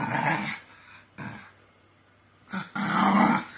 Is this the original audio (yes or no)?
yes